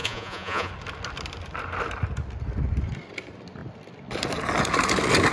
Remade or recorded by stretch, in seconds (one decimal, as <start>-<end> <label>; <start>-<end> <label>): 0.0-0.7 remade; 0.7-5.3 recorded